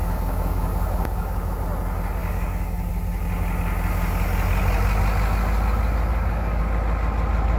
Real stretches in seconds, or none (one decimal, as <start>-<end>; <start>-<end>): 1.5-2.2; 2.9-6.1; 6.6-7.6

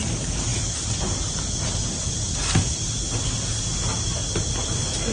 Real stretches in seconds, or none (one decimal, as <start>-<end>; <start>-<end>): 0.0-5.1

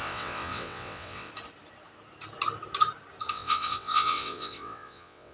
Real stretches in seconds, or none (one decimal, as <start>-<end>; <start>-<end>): 1.3-3.3

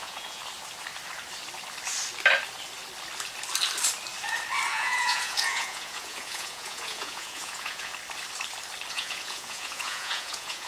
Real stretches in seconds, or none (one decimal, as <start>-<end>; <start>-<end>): 0.4-4.7; 7.9-8.9